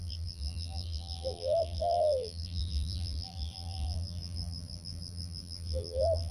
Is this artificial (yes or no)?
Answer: yes